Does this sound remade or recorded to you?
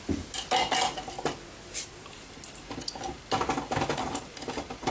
recorded